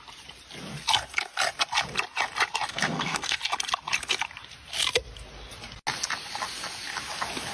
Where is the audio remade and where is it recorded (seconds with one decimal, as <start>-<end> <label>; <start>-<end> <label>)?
0.0-2.7 recorded; 2.7-3.4 remade; 3.4-7.5 recorded